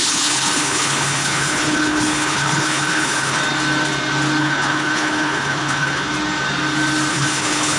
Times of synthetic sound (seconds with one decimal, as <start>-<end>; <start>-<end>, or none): 0.0-3.4; 4.4-6.1; 7.1-7.8